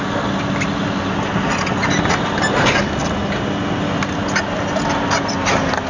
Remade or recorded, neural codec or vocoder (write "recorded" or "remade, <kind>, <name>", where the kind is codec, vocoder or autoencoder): recorded